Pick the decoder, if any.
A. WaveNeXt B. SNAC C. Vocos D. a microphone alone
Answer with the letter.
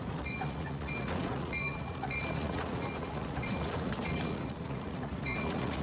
C